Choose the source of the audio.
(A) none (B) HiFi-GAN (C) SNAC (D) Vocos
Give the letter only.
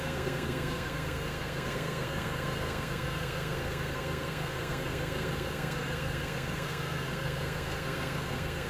C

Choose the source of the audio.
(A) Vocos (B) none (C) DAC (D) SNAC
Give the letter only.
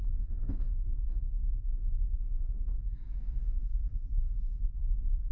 D